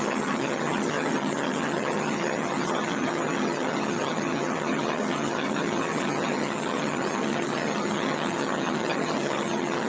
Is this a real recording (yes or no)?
no